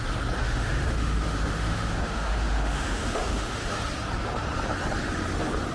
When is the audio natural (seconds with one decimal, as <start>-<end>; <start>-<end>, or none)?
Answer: 0.0-0.4; 3.8-5.7